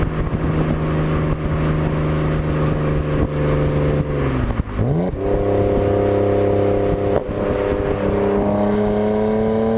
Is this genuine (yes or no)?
yes